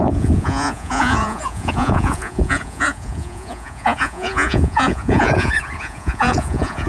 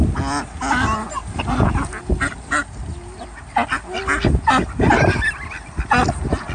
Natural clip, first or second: second